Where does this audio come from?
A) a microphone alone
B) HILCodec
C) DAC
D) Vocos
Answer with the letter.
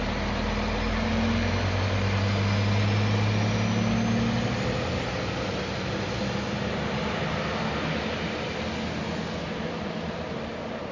A